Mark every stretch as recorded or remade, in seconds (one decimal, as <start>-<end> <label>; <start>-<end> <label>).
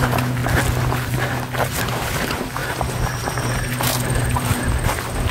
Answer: 0.0-0.4 remade; 0.4-1.8 recorded; 1.8-5.3 remade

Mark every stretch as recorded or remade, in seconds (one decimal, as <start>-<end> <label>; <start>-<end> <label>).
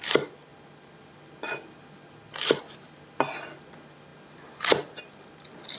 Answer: 0.0-5.8 recorded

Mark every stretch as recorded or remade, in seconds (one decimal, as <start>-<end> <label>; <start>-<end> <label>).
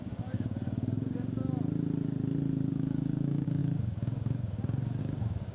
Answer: 0.0-1.4 remade; 1.4-2.7 recorded; 2.7-5.5 remade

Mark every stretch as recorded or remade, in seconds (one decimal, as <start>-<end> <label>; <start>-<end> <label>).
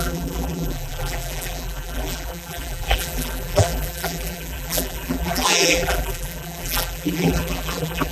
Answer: 0.0-8.1 remade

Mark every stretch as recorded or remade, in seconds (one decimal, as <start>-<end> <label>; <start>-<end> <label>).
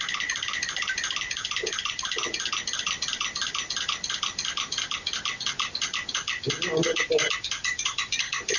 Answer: 0.0-8.6 recorded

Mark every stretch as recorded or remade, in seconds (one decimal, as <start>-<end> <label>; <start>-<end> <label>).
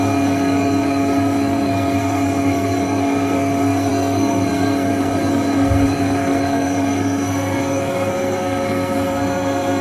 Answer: 0.0-9.8 remade